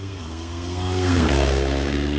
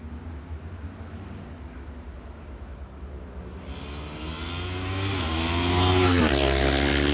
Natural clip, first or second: second